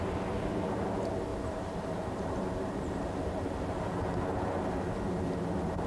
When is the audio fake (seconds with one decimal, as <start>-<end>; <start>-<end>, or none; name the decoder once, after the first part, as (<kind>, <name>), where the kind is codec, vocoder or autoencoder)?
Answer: 1.3-4.0 (vocoder, BigVGAN v2)